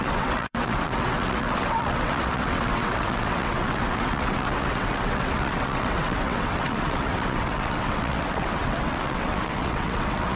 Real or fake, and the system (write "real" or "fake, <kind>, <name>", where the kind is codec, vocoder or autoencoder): fake, vocoder, WaveNeXt